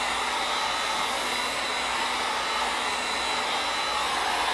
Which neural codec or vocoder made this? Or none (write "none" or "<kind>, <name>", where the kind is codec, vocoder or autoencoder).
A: none